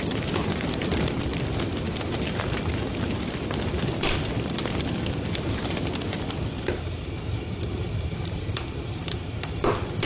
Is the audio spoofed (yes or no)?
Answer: yes